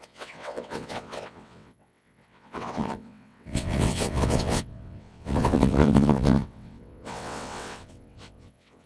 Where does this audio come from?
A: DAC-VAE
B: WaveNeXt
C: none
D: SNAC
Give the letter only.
B